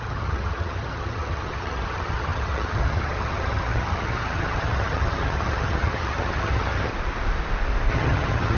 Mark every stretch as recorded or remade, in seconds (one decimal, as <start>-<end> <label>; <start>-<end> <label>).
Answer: 0.0-6.9 remade; 6.9-7.9 recorded; 7.9-8.6 remade